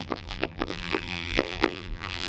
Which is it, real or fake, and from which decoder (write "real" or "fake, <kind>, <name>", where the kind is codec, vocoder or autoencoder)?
fake, vocoder, BigVGAN v2